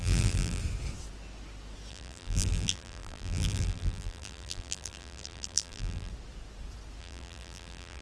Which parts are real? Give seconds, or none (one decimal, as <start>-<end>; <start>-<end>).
0.6-1.9; 6.1-7.0